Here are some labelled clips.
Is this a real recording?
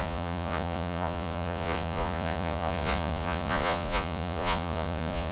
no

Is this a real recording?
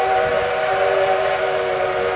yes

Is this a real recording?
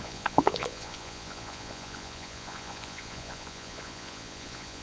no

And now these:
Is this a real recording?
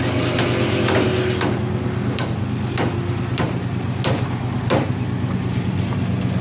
yes